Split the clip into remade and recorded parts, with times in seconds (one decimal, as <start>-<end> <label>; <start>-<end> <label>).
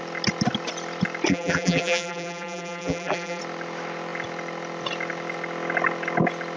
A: 0.0-1.3 recorded; 1.3-3.4 remade; 3.4-6.6 recorded